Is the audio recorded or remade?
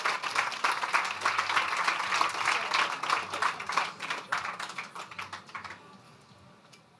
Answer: recorded